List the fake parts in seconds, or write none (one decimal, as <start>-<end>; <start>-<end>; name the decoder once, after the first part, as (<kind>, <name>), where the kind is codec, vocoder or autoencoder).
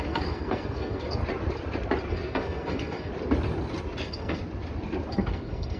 0.0-1.2 (codec, SNAC); 2.1-3.1; 4.0-4.4; 5.1-5.8